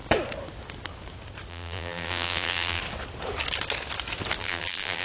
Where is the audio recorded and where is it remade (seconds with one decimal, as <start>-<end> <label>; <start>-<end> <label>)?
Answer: 0.0-1.5 recorded; 1.5-2.8 remade; 2.8-4.4 recorded; 4.4-5.0 remade